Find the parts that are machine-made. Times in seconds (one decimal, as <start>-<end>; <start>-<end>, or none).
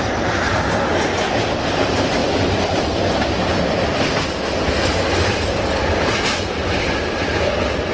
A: none